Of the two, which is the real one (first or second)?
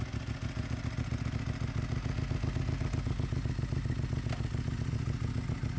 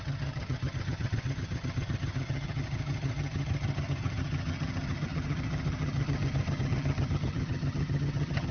first